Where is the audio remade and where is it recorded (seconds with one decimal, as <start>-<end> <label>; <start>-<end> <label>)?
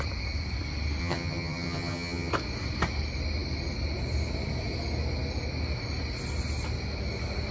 0.0-1.0 recorded; 1.0-2.3 remade; 2.3-7.5 recorded